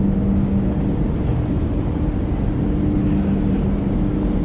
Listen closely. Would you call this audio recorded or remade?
recorded